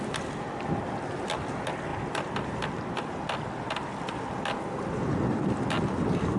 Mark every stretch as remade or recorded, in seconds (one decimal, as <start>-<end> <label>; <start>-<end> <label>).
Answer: 0.0-6.4 recorded